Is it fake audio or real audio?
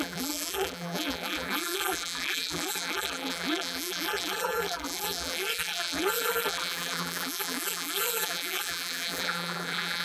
fake